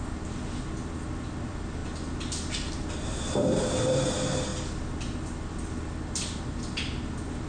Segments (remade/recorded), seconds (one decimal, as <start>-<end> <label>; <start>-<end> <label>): 0.0-7.5 recorded